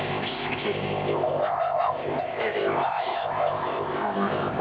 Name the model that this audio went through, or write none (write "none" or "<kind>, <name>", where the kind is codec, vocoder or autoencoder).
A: codec, ZipCodec